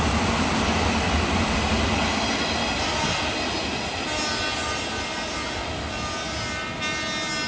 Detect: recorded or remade recorded